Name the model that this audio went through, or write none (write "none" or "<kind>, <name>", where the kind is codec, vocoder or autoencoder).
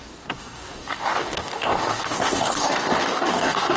codec, DAC